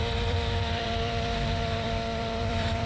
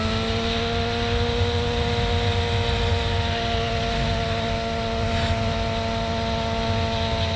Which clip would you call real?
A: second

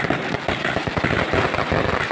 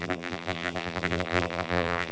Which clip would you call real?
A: first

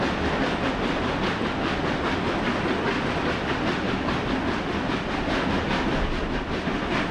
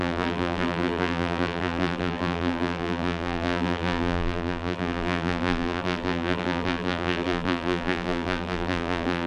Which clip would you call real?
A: first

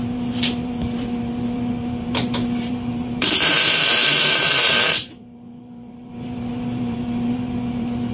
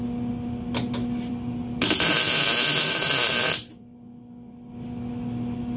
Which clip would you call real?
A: second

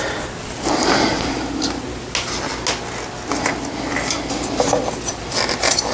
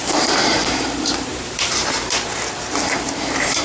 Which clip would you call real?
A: first